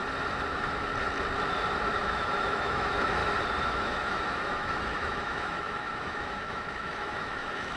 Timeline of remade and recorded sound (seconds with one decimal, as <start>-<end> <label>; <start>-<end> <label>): 0.0-0.5 recorded; 0.5-0.9 remade; 0.9-1.9 recorded; 1.9-3.2 remade; 3.2-3.7 recorded; 3.7-7.8 remade